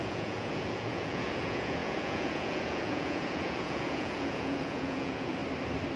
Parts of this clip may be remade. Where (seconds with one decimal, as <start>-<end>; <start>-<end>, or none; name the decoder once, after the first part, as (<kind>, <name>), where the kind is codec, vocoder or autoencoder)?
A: 0.0-5.4 (vocoder, Vocos)